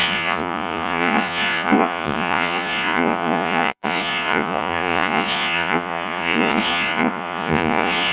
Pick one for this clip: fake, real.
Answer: fake